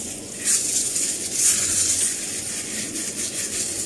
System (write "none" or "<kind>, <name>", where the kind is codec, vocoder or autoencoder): vocoder, Vocos